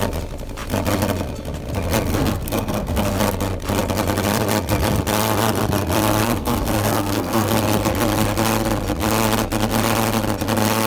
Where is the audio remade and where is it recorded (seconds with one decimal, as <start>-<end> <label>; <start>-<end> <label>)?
0.0-2.1 recorded; 2.1-3.2 remade; 3.2-6.2 recorded; 6.2-7.5 remade; 7.5-10.9 recorded